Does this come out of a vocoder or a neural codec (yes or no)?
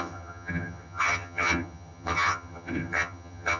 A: yes